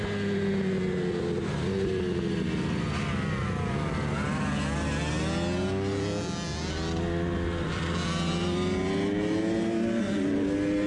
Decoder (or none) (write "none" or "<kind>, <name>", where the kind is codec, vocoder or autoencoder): none